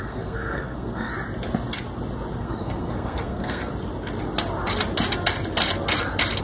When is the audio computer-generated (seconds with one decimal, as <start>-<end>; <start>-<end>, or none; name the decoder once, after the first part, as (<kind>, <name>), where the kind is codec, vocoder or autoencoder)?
0.0-1.1 (codec, SNAC); 2.4-3.6